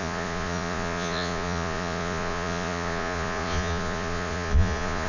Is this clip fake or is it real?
fake